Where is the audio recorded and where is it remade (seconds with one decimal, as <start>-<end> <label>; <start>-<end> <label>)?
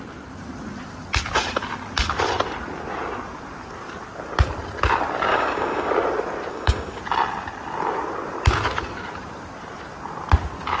0.0-5.3 recorded; 5.3-5.9 remade; 5.9-6.5 recorded; 6.5-7.0 remade; 7.0-10.8 recorded